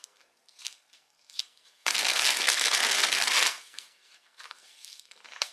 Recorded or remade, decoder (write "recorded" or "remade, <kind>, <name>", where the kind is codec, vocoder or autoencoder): remade, codec, SNAC